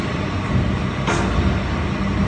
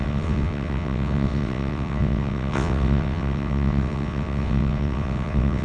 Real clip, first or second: first